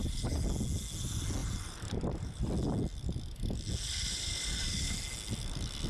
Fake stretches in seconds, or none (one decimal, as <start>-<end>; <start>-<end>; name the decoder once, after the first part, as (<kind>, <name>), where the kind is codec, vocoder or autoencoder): 1.4-2.5 (vocoder, BigVGAN v2)